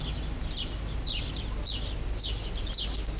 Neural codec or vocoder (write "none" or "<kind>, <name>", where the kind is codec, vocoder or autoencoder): none